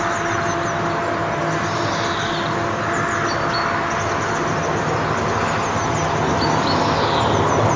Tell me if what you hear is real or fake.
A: real